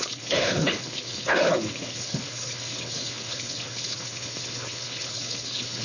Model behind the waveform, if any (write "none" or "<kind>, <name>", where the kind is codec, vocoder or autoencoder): codec, HILCodec